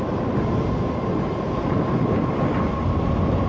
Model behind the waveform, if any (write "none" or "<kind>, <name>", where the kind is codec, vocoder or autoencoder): none